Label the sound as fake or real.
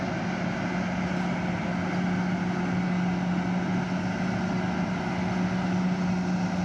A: real